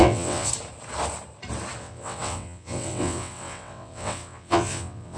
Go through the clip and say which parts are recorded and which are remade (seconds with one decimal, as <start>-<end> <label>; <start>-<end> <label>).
0.0-0.5 remade; 0.5-1.8 recorded; 1.8-5.2 remade

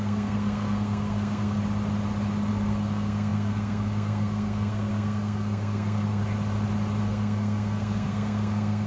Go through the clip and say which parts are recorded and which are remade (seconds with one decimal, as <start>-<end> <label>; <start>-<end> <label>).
0.0-1.6 remade; 1.6-2.5 recorded; 2.5-6.2 remade; 6.2-7.0 recorded; 7.0-8.9 remade

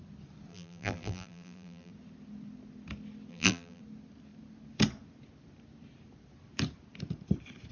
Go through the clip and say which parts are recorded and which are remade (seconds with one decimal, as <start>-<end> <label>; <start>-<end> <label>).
0.0-0.5 recorded; 0.5-1.9 remade; 1.9-3.3 recorded; 3.3-3.8 remade; 3.8-7.7 recorded

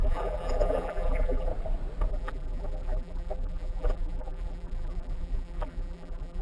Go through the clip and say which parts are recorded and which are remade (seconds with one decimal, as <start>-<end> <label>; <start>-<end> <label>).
0.0-1.5 remade; 1.5-2.1 recorded; 2.1-6.4 remade

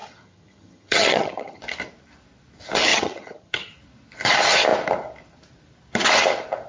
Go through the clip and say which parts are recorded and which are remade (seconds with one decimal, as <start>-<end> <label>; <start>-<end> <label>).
0.0-1.6 remade; 1.6-2.9 recorded; 2.9-3.7 remade; 3.7-6.7 recorded

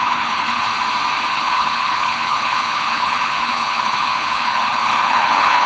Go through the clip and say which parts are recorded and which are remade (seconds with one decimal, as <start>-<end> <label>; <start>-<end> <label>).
0.0-0.7 remade; 0.7-1.3 recorded; 1.3-5.7 remade